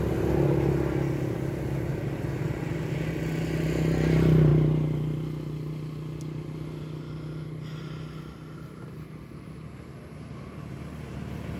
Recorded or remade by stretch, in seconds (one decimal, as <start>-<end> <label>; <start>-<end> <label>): 0.0-11.6 recorded